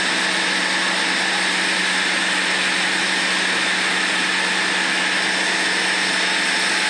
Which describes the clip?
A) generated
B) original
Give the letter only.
B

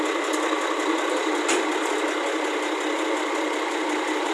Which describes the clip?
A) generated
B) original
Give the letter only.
B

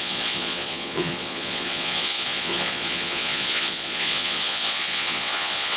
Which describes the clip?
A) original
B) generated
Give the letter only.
B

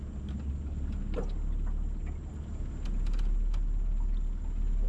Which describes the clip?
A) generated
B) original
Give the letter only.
B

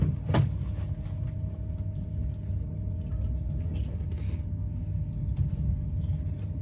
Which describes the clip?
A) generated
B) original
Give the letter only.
B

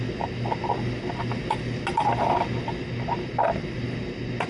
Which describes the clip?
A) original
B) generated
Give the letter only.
A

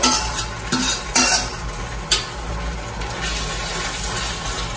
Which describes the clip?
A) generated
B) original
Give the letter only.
B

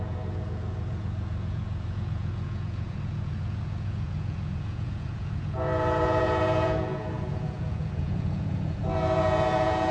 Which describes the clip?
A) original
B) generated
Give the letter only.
B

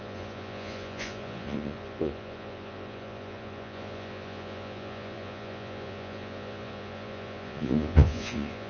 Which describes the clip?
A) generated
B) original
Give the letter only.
A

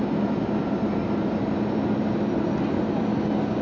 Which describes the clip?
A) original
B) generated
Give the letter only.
A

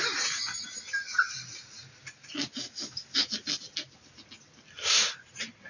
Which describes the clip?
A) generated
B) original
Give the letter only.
B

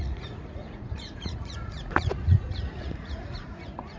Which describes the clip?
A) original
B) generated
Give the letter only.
B